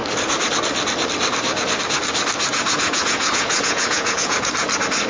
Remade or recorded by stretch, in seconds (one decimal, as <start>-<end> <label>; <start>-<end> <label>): 0.0-2.5 recorded; 2.5-4.5 remade; 4.5-5.1 recorded